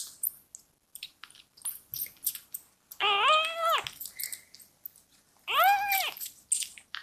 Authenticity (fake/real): real